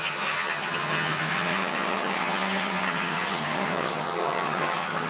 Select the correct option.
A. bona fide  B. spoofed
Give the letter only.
B